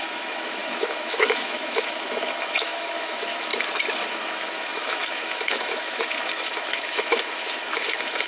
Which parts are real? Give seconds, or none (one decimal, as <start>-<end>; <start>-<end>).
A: 3.5-4.1